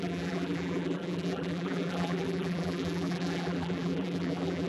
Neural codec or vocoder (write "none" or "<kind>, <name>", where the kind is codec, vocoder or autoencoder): vocoder, BigVGAN v2